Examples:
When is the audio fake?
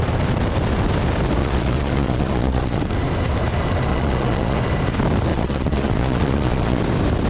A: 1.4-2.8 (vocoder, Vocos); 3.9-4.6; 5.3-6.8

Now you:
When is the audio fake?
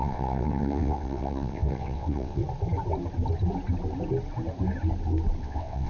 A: 0.0-2.4 (vocoder, WaveNeXt); 5.4-5.9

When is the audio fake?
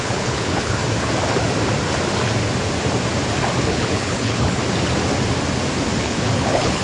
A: 0.0-0.8 (codec, HILCodec); 3.7-4.6; 6.0-6.8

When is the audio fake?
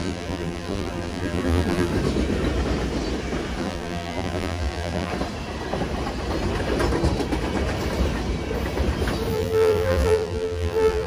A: 0.0-1.9 (vocoder, BigVGAN v2); 3.6-5.1; 9.3-11.1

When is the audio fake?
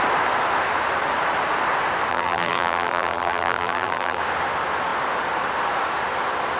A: 2.1-4.2 (vocoder, BigVGAN v2)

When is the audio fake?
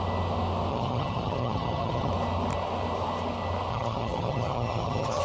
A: 0.7-2.1 (vocoder, HiFi-GAN); 3.7-5.2